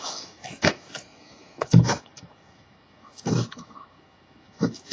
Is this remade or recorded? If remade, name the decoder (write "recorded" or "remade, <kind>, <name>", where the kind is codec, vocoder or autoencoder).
remade, autoencoder, DAC-VAE